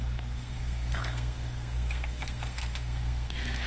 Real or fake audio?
fake